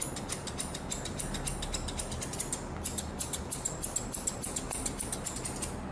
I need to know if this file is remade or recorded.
recorded